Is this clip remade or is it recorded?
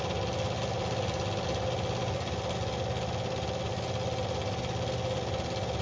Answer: recorded